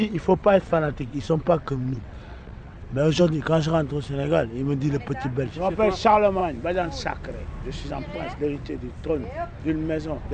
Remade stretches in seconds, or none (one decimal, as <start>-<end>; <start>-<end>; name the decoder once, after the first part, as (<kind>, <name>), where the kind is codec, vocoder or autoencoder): 0.0-3.2 (vocoder, WaveNeXt)